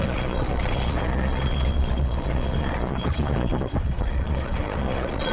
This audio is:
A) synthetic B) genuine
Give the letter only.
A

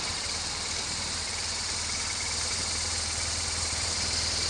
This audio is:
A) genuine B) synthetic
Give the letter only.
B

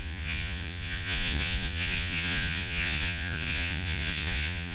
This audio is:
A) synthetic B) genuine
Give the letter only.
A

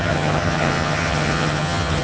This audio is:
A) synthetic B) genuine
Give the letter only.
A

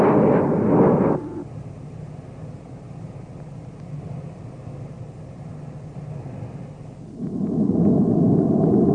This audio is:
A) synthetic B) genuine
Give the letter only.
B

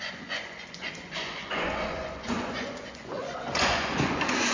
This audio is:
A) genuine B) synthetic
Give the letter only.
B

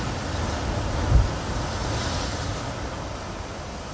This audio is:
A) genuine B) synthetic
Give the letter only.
A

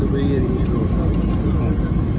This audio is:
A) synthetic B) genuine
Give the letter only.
B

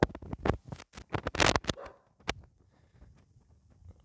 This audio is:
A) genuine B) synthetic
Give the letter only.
A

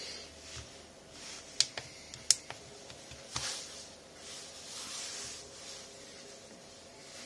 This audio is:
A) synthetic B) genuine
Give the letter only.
B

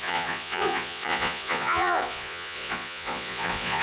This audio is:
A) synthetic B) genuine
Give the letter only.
A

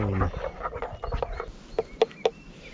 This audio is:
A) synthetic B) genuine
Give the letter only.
B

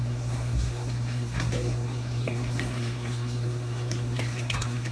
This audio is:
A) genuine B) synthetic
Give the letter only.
B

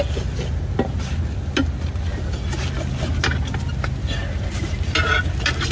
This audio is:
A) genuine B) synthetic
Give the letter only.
A